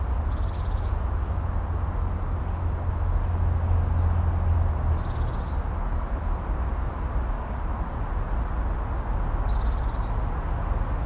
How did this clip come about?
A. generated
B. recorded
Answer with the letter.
B